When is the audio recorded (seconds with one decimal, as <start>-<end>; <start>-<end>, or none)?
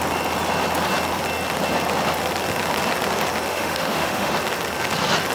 0.0-3.5; 4.3-5.3